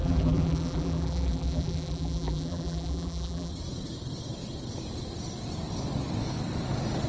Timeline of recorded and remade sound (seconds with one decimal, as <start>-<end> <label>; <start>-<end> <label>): 0.0-3.5 remade; 3.5-7.1 recorded